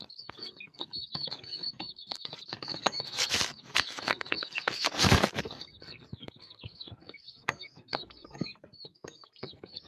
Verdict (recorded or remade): remade